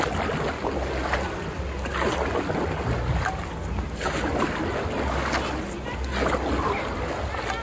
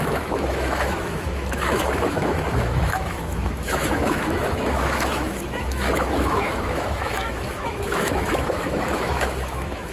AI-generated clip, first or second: second